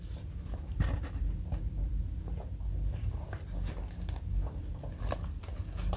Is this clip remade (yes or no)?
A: no